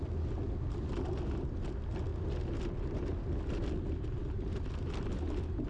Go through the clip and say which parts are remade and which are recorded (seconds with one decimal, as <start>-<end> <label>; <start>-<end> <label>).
0.0-5.7 recorded